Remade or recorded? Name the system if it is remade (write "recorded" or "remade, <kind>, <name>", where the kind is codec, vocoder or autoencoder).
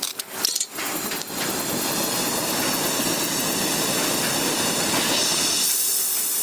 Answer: recorded